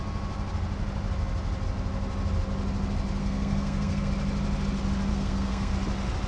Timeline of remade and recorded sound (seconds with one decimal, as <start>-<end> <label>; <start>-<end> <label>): 0.0-3.2 recorded; 3.2-4.1 remade; 4.1-5.1 recorded; 5.1-5.7 remade; 5.7-6.3 recorded